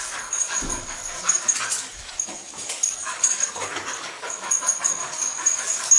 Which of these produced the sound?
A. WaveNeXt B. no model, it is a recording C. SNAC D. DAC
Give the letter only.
D